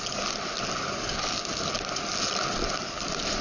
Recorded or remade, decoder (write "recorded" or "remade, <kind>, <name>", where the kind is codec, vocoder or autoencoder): recorded